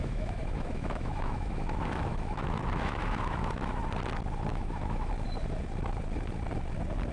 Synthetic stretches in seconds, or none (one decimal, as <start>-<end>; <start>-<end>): 0.0-3.8; 4.5-5.1